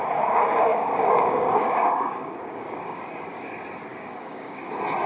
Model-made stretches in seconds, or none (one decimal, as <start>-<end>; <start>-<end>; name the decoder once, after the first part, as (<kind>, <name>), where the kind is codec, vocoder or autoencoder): 0.7-3.5 (codec, DAC); 3.9-4.6